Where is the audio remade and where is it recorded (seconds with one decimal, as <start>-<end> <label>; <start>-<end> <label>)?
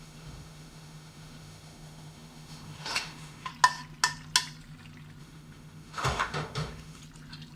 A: 0.0-3.5 remade; 3.5-5.2 recorded; 5.2-7.0 remade; 7.0-7.6 recorded